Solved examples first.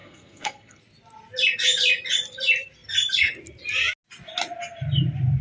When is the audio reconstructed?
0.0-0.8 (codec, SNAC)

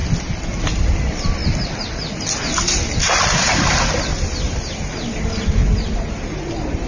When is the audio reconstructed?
0.6-1.4 (vocoder, BigVGAN v2); 3.0-4.1

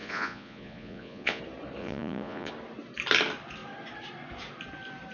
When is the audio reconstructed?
0.0-1.4 (vocoder, Vocos); 1.8-2.5

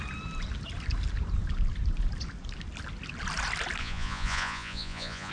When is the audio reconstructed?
3.8-5.3 (vocoder, Vocos)

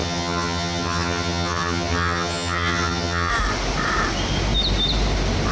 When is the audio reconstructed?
0.0-3.3 (vocoder, HiFi-GAN)

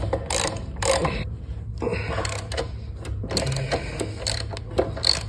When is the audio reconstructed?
1.0-1.5 (vocoder, BigVGAN v2)

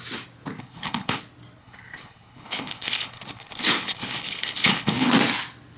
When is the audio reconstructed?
0.6-1.2 (codec, HILCodec); 1.6-5.1

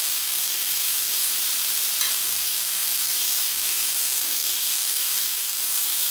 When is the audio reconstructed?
0.0-1.3 (codec, DAC); 2.1-6.1